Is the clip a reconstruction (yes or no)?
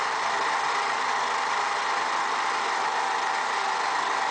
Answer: no